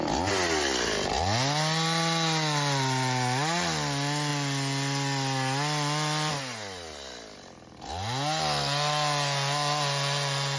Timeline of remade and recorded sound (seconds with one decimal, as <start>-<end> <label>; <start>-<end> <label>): 0.0-10.6 recorded